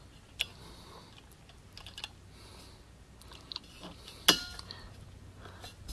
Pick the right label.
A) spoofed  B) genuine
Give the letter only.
B